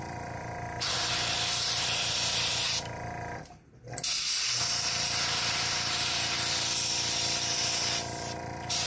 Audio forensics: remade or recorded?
recorded